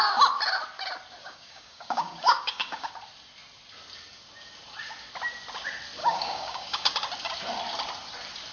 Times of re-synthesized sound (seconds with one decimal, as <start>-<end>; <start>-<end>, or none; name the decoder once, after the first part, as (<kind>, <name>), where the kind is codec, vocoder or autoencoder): 1.2-2.9 (codec, DAC); 6.0-6.9